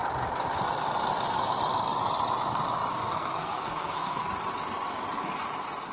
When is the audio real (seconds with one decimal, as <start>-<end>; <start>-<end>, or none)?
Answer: 0.0-2.9; 4.3-5.9